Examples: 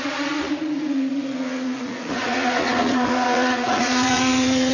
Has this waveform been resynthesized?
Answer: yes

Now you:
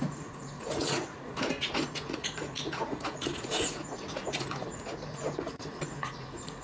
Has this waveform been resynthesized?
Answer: yes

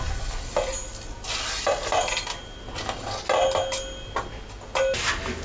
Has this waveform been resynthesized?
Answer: no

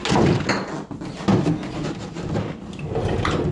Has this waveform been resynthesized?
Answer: no